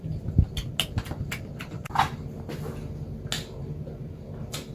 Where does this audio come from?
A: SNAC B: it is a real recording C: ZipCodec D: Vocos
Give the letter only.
B